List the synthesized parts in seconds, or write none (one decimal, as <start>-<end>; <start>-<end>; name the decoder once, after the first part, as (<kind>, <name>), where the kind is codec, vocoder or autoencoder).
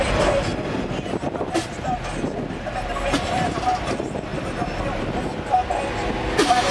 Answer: none